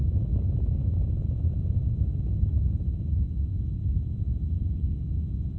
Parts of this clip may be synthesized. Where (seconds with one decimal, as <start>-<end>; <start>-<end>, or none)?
none